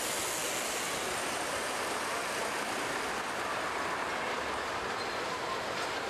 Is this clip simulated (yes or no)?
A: no